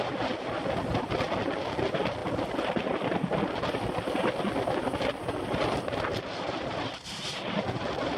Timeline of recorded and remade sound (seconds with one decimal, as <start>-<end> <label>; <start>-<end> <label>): 0.0-8.2 recorded